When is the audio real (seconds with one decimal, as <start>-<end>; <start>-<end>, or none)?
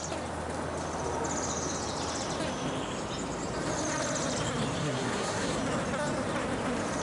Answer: 0.0-4.8; 5.6-7.0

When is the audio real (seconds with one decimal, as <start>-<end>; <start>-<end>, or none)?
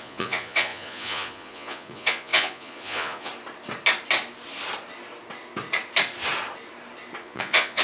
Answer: 3.3-7.2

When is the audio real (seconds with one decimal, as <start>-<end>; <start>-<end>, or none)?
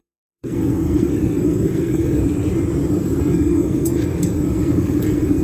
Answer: 2.2-2.9